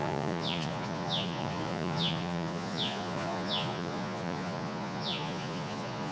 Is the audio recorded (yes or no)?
no